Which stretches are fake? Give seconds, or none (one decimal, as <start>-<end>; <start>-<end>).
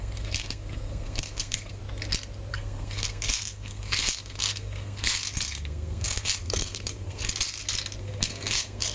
0.0-1.8; 2.5-7.2; 8.0-8.9